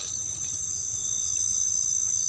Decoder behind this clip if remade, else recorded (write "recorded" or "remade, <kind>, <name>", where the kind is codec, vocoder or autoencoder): recorded